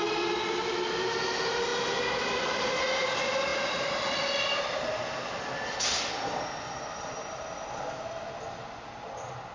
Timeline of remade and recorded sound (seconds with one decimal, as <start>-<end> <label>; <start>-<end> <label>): 0.0-9.5 recorded